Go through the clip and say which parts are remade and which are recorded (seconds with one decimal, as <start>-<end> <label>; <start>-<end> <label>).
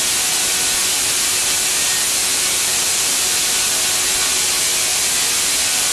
0.0-0.8 recorded; 0.8-3.7 remade; 3.7-4.9 recorded; 4.9-5.9 remade